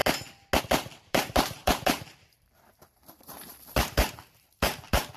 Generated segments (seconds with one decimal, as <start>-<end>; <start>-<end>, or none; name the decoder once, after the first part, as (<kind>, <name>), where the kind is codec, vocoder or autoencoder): 0.6-5.2 (vocoder, BigVGAN v2)